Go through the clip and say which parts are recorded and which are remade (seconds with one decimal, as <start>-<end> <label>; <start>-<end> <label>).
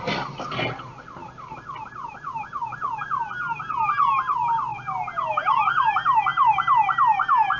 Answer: 0.0-7.6 recorded